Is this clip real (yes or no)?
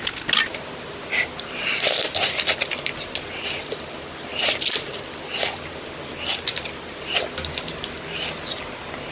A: yes